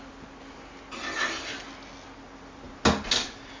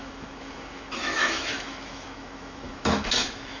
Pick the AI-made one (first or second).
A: second